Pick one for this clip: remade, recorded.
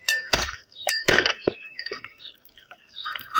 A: remade